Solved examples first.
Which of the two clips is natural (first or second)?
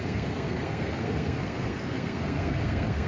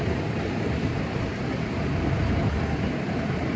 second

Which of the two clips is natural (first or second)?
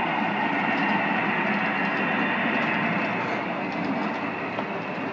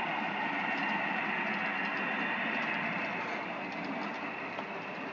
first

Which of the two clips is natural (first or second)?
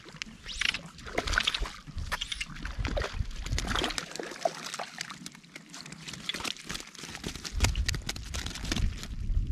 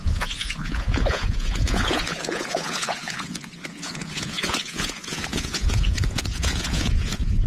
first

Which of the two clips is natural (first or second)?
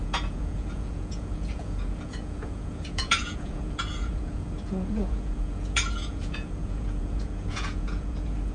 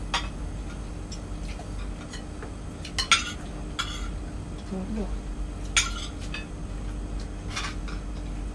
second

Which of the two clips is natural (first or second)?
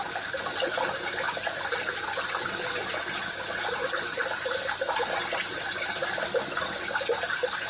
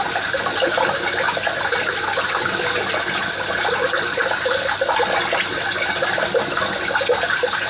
second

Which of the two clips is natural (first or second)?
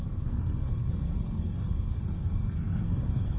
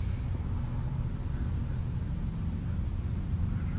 second